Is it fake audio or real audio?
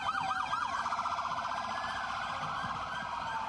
real